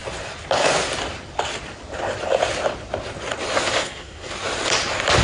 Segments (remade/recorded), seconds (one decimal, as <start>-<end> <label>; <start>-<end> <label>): 0.0-3.8 recorded; 3.8-4.3 remade; 4.3-5.2 recorded